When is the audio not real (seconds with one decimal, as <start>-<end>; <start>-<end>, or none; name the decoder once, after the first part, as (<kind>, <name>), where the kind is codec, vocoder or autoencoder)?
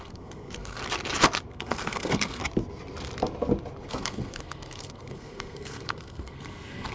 0.0-0.8 (codec, SNAC); 1.5-2.4; 3.9-6.9